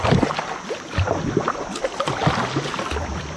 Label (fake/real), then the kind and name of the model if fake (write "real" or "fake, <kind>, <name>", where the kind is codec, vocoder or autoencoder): real